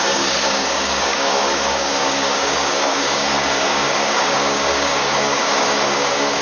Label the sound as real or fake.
fake